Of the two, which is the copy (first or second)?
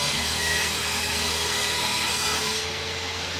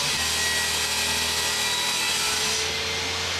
first